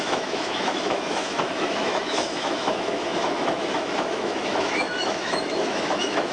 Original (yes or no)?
no